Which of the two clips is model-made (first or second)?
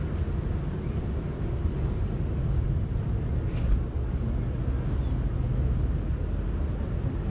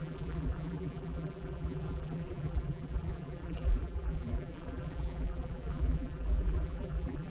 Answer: second